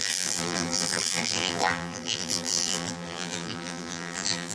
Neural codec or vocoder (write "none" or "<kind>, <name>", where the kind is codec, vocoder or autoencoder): vocoder, BigVGAN v2